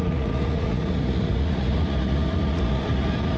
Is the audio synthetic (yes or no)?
yes